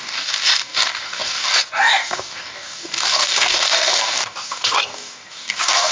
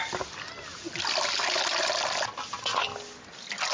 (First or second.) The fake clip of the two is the first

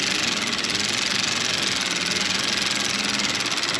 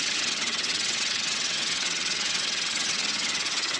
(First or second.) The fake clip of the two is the second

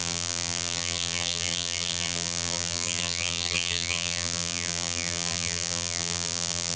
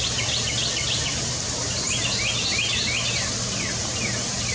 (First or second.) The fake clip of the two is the first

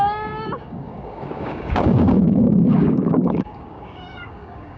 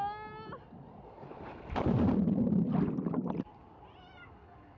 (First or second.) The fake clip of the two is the first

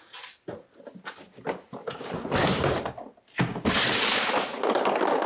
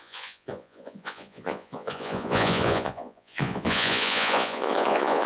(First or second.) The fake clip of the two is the second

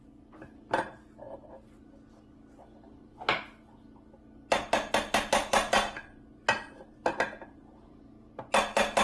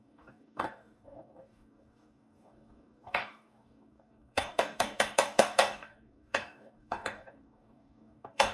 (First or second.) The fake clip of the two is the second